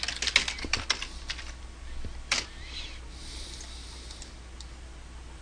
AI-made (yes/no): no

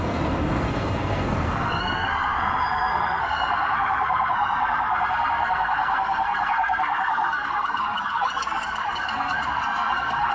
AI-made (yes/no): yes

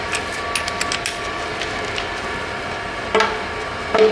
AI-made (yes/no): no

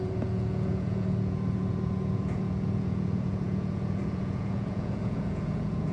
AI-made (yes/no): yes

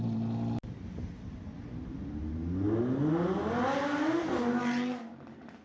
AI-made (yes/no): no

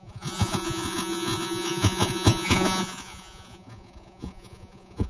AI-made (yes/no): yes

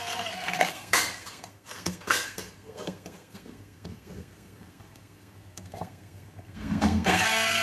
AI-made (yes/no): yes